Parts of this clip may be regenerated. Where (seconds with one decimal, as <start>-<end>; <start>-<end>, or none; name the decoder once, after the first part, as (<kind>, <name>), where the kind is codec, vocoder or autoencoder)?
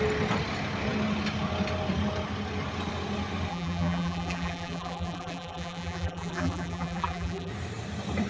3.5-7.5 (vocoder, BigVGAN v2)